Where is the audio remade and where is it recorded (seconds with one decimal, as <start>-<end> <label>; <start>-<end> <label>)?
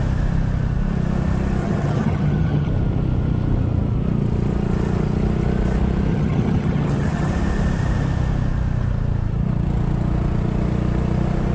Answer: 0.0-1.6 recorded; 1.6-2.7 remade; 2.7-6.1 recorded; 6.1-7.3 remade; 7.3-11.5 recorded